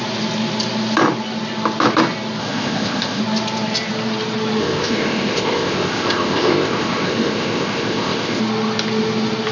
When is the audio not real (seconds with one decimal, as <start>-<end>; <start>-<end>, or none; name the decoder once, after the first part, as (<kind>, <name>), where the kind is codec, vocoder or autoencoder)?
2.4-3.2 (codec, ZipCodec); 4.6-8.4